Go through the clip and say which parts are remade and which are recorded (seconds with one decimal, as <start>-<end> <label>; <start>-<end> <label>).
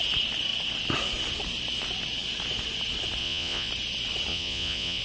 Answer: 0.0-3.2 recorded; 3.2-3.7 remade; 3.7-4.3 recorded; 4.3-5.0 remade